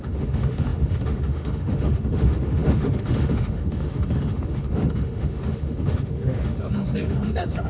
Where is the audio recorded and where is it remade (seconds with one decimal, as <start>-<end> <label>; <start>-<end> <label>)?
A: 0.0-7.7 remade